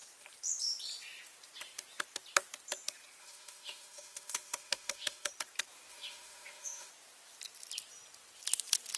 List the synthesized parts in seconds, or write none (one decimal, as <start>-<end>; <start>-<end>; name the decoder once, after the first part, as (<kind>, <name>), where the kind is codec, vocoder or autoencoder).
3.2-5.3 (autoencoder, DAC-VAE); 5.9-6.9